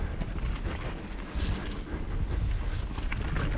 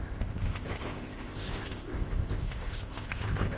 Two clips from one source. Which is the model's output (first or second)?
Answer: second